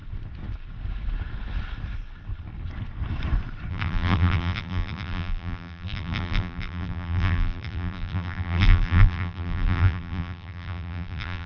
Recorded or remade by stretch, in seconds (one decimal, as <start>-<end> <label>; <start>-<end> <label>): 0.0-3.7 recorded; 3.7-11.5 remade

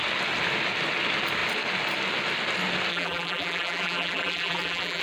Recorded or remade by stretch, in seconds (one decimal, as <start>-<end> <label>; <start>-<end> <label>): 0.0-2.9 recorded; 2.9-5.0 remade

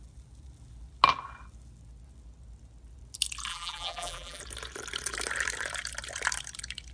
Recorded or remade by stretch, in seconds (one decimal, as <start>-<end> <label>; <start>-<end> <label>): 0.0-3.5 recorded; 3.5-4.4 remade; 4.4-6.9 recorded

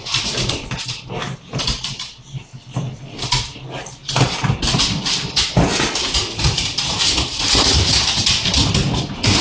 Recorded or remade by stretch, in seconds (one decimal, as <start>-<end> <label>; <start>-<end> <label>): 0.0-9.4 recorded

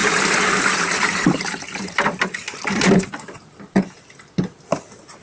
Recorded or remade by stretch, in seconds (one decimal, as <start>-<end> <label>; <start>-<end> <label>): 0.0-3.1 remade; 3.1-5.2 recorded

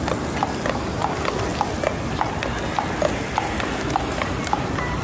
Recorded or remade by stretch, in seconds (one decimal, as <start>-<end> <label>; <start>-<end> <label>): 0.0-5.0 recorded